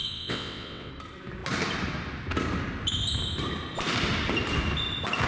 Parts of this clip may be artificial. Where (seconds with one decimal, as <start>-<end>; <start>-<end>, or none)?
0.0-0.9

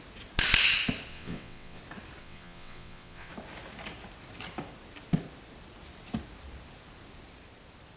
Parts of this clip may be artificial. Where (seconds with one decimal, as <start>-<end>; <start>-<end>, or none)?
1.1-1.8; 2.2-3.3

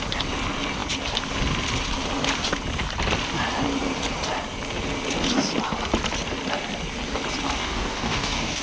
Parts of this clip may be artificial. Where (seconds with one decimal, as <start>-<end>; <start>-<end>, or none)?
7.6-8.6